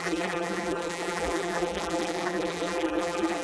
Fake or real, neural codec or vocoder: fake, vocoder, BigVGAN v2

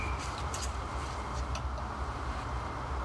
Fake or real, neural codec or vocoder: real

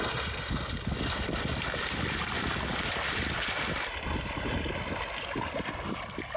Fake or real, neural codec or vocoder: fake, vocoder, BigVGAN v2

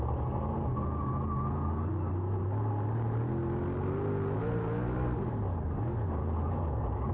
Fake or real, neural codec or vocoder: real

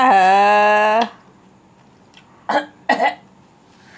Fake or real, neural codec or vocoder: real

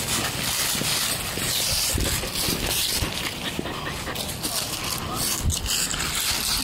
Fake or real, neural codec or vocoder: real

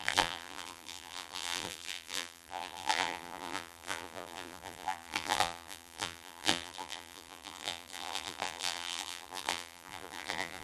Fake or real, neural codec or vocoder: fake, vocoder, BigVGAN v2